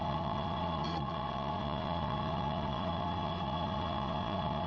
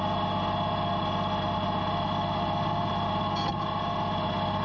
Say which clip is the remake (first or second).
first